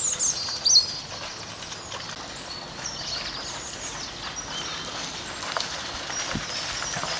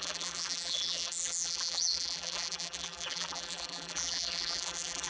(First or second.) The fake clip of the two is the second